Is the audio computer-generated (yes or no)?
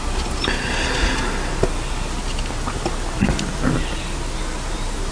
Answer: no